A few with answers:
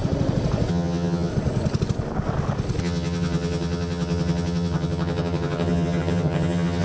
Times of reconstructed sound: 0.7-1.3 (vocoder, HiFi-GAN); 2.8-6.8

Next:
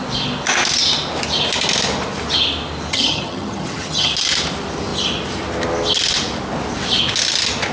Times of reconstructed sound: 2.9-4.1 (vocoder, HiFi-GAN)

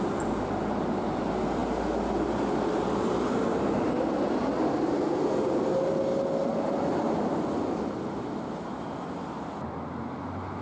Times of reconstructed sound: none

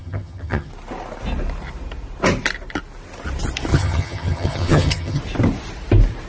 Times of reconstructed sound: 0.0-0.7 (vocoder, HiFi-GAN); 3.7-5.2

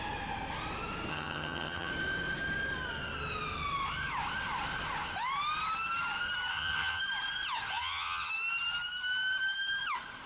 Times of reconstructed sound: 1.1-1.9 (vocoder, HiFi-GAN); 6.5-7.0; 7.7-8.3